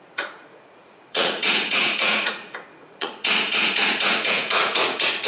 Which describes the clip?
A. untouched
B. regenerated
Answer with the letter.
B